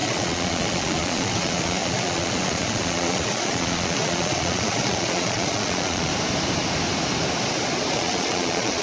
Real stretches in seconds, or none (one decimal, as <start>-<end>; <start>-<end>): 6.1-7.9